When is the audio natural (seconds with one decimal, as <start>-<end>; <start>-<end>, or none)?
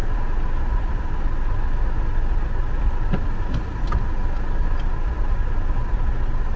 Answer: 0.0-6.6